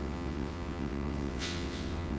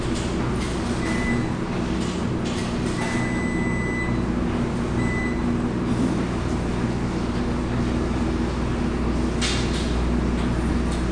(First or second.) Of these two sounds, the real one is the second